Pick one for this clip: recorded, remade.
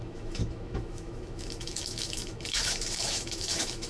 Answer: remade